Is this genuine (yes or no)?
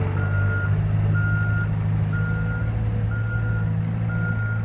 yes